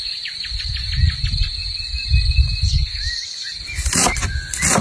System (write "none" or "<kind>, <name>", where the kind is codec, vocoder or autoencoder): none